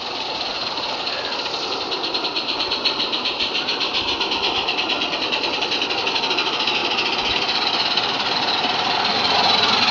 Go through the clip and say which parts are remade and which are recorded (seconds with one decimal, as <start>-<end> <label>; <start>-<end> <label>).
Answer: 0.0-3.7 remade; 3.7-4.4 recorded; 4.4-6.8 remade; 6.8-7.3 recorded; 7.3-9.9 remade